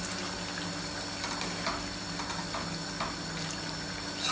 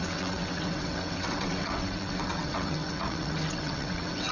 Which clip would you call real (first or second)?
first